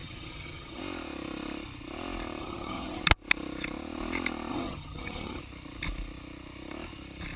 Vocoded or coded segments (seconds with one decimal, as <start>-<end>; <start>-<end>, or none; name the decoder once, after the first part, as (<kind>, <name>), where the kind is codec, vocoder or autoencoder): 0.0-0.8 (vocoder, HiFi-GAN); 2.4-3.0; 4.5-5.4